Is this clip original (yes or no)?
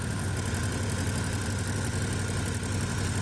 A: yes